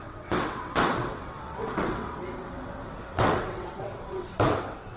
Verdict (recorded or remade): remade